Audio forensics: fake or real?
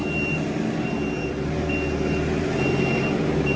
real